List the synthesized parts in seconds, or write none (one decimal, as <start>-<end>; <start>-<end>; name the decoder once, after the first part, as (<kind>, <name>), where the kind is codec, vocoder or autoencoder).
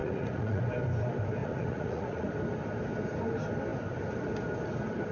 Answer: 0.0-0.6 (vocoder, Vocos); 1.4-2.3